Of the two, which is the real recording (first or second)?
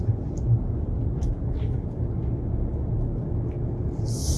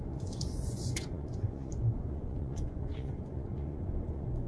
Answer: first